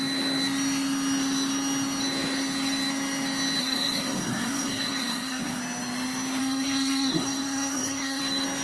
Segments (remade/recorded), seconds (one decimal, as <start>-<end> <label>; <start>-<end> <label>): 0.0-3.6 recorded; 3.6-5.6 remade; 5.6-6.4 recorded; 6.4-8.2 remade; 8.2-8.6 recorded